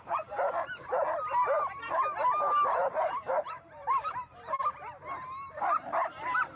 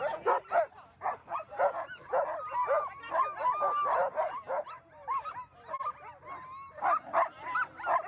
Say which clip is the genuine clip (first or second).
second